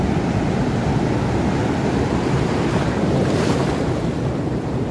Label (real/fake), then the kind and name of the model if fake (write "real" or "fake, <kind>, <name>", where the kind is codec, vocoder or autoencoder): fake, vocoder, BigVGAN v2